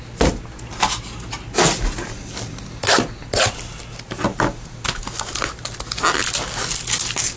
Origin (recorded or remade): recorded